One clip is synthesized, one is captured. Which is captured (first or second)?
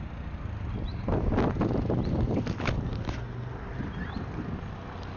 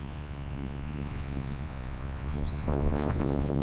first